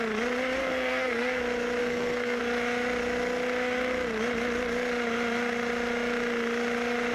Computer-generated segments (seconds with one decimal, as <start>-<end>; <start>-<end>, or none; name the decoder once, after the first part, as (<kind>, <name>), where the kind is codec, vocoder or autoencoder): 0.6-1.4 (codec, SNAC); 1.8-2.4